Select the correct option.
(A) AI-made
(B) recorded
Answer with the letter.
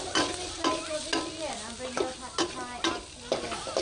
B